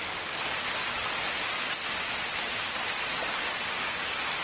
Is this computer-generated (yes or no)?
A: no